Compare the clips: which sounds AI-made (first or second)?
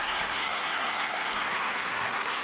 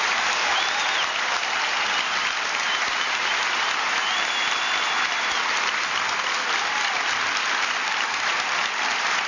first